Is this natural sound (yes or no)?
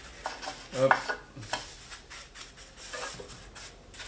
yes